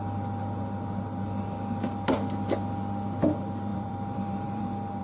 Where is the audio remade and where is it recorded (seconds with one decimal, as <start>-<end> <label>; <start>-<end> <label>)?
0.0-3.7 recorded; 3.7-5.0 remade